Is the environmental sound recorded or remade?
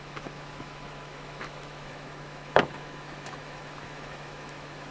remade